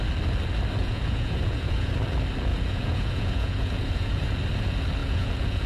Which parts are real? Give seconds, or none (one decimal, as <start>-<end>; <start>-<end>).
0.0-0.8; 1.9-2.5; 4.3-5.0